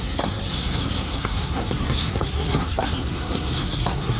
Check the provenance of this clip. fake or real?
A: fake